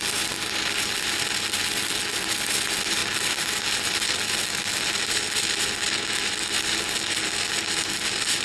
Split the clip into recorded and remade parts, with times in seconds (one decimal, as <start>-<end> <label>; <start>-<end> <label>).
0.0-8.4 recorded